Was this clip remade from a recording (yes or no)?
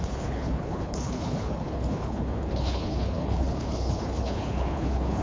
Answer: yes